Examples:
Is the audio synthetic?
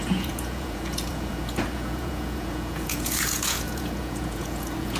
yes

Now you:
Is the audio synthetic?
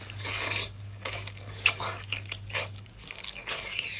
yes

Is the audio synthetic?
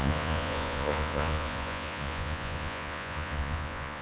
yes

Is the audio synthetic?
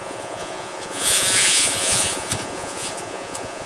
yes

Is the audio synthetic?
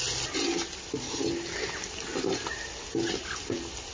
no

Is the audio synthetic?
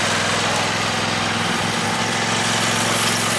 no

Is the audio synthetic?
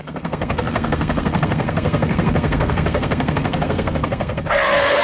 yes